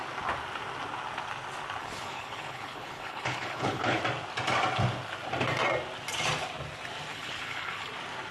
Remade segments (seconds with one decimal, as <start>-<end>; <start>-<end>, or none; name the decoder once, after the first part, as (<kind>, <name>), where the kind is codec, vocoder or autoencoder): 1.8-4.0 (codec, HILCodec); 7.1-7.9